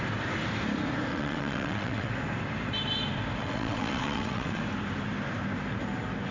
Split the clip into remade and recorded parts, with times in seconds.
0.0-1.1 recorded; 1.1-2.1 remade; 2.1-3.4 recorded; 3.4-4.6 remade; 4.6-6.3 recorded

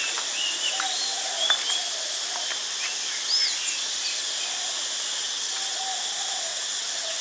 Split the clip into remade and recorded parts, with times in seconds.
0.0-5.2 recorded; 5.2-5.8 remade; 5.8-6.5 recorded; 6.5-7.2 remade

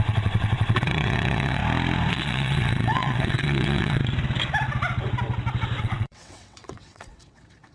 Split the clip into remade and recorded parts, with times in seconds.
0.0-1.6 remade; 1.6-2.1 recorded; 2.1-4.0 remade; 4.0-5.8 recorded; 5.8-7.7 remade

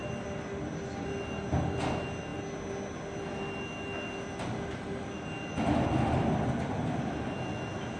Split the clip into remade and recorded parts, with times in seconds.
0.0-8.0 recorded

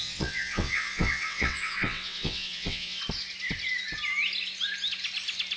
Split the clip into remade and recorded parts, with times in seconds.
0.0-3.0 remade; 3.0-5.6 recorded